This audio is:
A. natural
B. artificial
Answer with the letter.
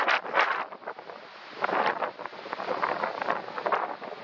A